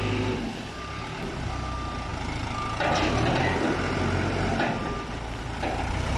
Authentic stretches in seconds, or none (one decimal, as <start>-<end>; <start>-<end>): 0.0-6.2